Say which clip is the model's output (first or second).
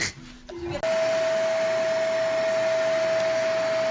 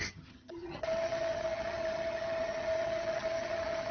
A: second